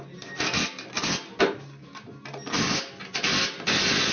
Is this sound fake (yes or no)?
no